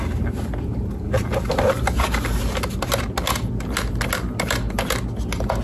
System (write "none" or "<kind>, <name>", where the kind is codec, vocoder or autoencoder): none